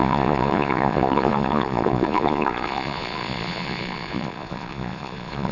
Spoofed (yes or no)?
yes